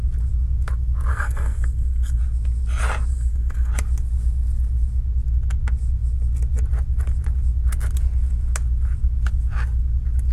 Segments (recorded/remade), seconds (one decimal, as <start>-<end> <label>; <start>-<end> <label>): 0.0-1.1 recorded; 1.1-2.2 remade; 2.2-3.1 recorded; 3.1-3.7 remade; 3.7-10.3 recorded